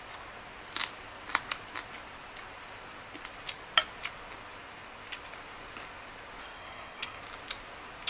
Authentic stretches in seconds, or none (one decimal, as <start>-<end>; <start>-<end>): 0.0-6.4; 7.2-8.1